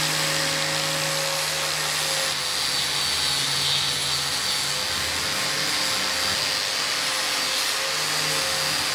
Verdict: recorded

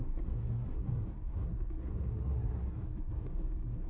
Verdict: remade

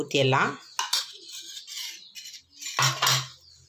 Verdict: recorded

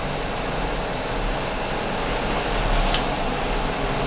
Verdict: recorded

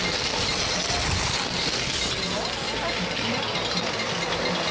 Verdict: recorded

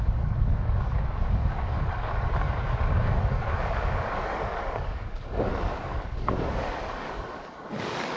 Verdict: remade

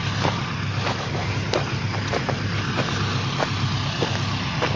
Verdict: recorded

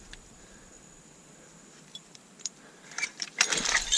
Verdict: remade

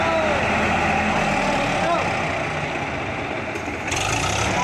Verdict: recorded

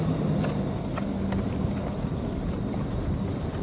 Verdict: recorded